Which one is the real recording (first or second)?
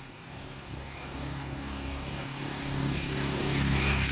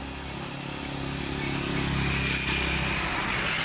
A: second